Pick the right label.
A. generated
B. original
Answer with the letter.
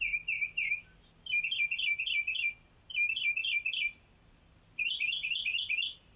B